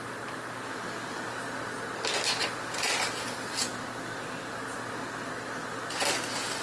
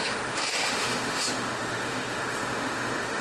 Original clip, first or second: first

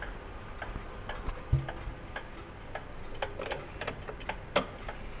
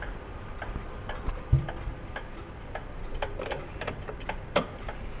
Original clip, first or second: first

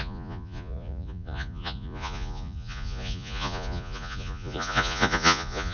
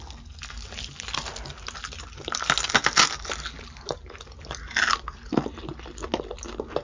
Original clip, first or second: second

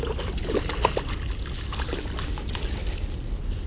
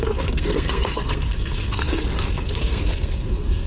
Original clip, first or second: first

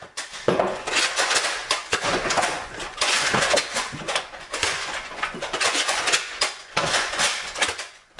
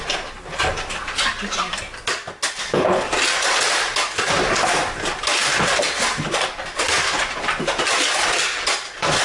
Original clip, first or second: second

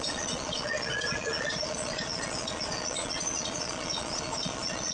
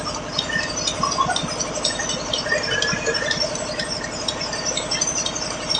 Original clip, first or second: second